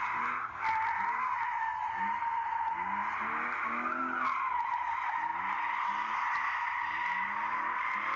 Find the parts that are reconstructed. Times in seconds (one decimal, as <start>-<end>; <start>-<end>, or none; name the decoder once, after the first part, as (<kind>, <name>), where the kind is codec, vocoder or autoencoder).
none